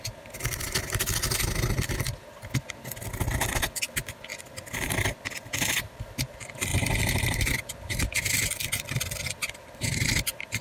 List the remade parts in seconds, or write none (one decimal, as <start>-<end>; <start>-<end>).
6.7-8.1